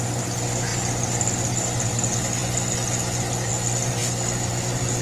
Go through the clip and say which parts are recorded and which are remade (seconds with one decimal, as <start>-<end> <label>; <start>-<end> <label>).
0.0-2.4 recorded; 2.4-3.5 remade; 3.5-4.0 recorded; 4.0-5.0 remade